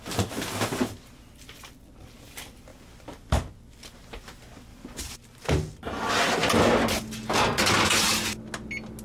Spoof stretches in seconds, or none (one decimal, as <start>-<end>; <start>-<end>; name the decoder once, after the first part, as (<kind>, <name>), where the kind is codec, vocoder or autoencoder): 2.7-3.5 (vocoder, BigVGAN v2); 4.7-5.5